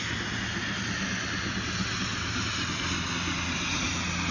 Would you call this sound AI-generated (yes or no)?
no